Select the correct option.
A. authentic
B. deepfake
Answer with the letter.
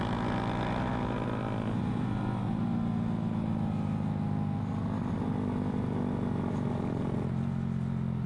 A